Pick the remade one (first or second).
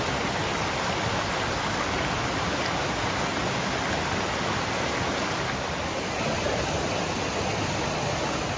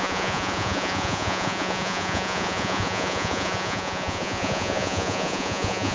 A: second